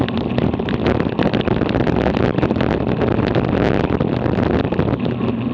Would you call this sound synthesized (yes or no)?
no